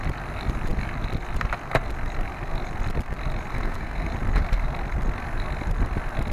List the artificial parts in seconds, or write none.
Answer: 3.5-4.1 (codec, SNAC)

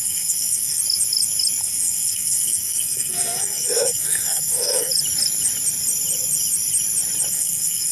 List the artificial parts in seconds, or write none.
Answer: 0.0-0.8 (codec, SNAC); 1.6-4.9; 7.3-7.9

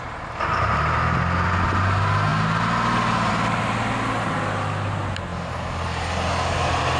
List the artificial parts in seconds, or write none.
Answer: none

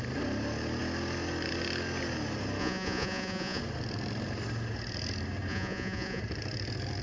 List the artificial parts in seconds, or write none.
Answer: 2.6-3.6 (vocoder, Vocos); 5.5-6.2

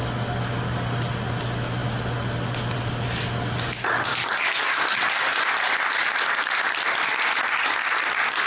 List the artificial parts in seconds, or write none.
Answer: 4.1-5.1 (codec, DAC)

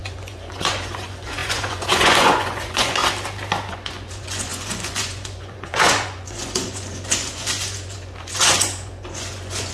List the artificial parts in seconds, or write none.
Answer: 0.0-3.0 (vocoder, Vocos); 3.7-9.7

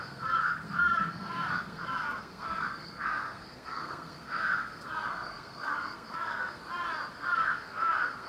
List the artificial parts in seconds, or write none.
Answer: 0.0-6.6 (codec, SNAC); 7.1-8.3

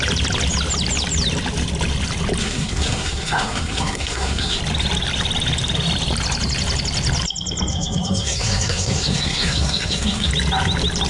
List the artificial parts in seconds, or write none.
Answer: 2.4-4.6 (codec, SNAC); 7.7-10.3